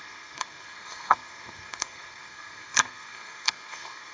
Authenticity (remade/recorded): remade